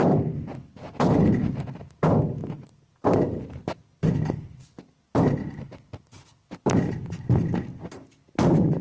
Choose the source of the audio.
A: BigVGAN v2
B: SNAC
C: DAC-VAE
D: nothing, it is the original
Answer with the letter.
D